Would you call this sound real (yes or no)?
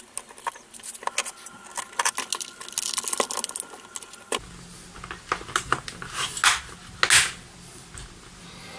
yes